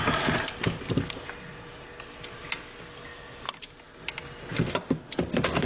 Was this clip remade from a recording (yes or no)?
no